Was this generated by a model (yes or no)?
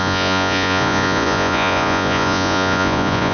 yes